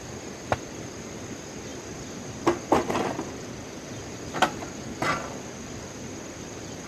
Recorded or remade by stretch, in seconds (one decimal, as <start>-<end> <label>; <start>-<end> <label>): 0.0-1.7 remade; 1.7-2.8 recorded; 2.8-6.9 remade